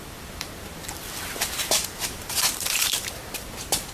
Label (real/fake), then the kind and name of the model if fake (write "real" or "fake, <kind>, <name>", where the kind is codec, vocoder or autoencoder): fake, vocoder, BigVGAN v2